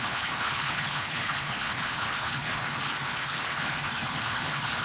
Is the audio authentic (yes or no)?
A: no